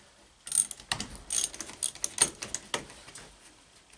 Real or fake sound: real